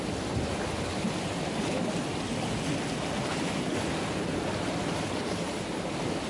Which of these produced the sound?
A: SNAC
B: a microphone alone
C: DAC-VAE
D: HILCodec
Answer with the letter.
B